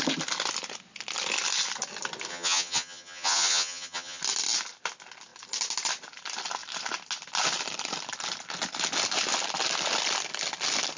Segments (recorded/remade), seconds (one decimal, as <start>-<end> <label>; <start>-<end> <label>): 0.0-2.3 recorded; 2.3-4.2 remade; 4.2-11.0 recorded

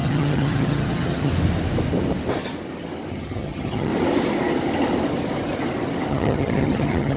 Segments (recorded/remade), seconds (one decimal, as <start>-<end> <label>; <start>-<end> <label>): 0.0-1.3 remade; 1.3-3.1 recorded; 3.1-3.9 remade; 3.9-6.1 recorded; 6.1-7.2 remade

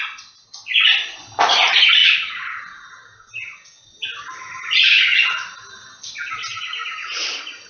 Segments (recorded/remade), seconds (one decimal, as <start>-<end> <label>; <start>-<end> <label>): 0.0-7.7 recorded

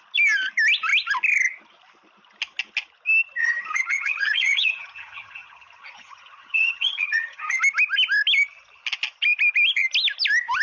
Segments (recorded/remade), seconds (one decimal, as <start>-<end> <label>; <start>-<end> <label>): 0.0-3.4 recorded; 3.4-7.6 remade; 7.6-10.6 recorded

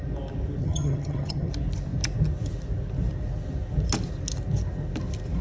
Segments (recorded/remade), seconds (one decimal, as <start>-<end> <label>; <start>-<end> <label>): 0.0-0.6 recorded; 0.6-1.5 remade; 1.5-5.4 recorded

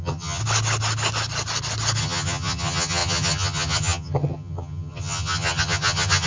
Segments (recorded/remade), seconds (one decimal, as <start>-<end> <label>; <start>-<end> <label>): 0.0-0.4 remade; 0.4-2.0 recorded; 2.0-6.3 remade

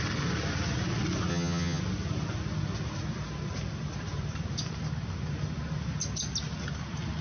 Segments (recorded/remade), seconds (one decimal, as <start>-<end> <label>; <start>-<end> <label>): 0.0-1.3 recorded; 1.3-1.8 remade; 1.8-7.2 recorded